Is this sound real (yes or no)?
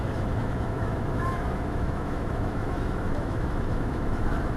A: no